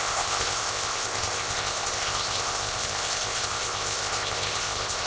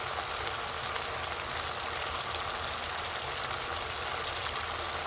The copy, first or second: first